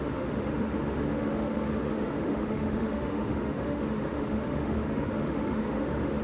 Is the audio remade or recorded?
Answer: remade